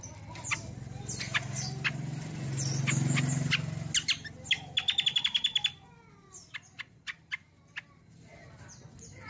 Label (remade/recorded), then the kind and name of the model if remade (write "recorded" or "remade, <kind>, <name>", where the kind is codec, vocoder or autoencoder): recorded